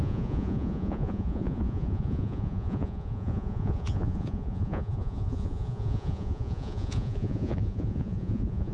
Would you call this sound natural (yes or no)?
no